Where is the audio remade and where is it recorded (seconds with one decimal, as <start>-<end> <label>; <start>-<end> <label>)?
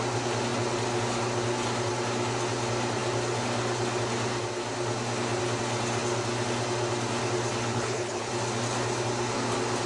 0.0-7.7 recorded; 7.7-8.3 remade; 8.3-9.9 recorded